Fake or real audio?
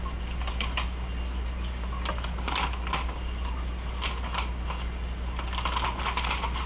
real